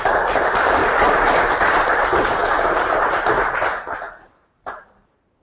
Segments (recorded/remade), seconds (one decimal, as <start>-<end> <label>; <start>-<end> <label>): 0.0-0.8 remade; 0.8-1.5 recorded; 1.5-5.4 remade